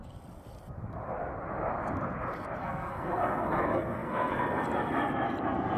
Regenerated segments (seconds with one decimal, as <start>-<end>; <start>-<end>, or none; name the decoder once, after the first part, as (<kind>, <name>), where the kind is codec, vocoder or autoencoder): 2.6-4.4 (codec, SNAC)